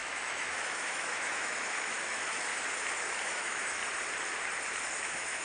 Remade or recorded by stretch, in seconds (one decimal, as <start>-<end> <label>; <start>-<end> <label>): 0.0-2.5 remade; 2.5-3.2 recorded; 3.2-3.8 remade; 3.8-5.0 recorded; 5.0-5.4 remade